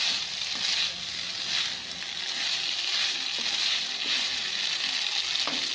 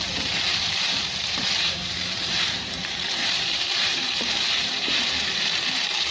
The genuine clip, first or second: first